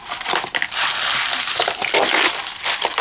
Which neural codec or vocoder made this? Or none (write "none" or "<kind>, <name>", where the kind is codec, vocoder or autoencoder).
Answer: none